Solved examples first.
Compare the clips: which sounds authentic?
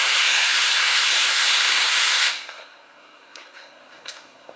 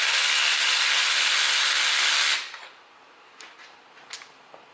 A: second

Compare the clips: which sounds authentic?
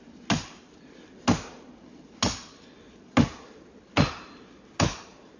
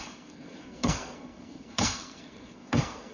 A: first